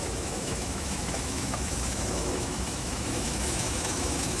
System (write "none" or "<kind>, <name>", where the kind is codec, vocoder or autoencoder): autoencoder, DAC-VAE